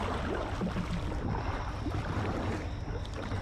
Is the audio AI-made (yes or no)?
no